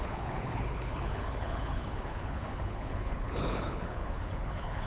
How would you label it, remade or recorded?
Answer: remade